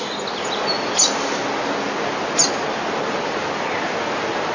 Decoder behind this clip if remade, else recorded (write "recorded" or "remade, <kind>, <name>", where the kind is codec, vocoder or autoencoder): recorded